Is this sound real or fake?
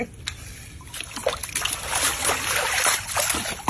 real